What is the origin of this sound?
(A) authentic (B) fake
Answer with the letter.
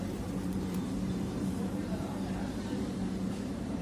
B